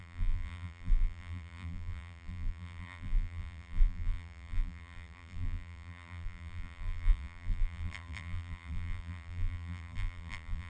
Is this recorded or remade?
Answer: remade